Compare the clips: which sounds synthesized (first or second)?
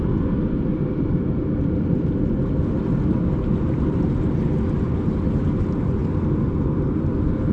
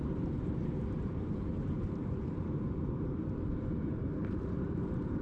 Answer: second